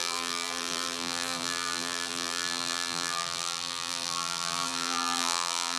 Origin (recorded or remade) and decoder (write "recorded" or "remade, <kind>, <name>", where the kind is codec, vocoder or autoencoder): remade, vocoder, BigVGAN v2